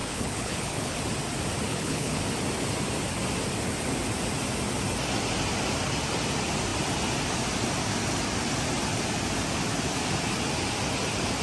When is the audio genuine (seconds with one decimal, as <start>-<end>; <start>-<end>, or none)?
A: 1.0-1.7; 2.2-11.4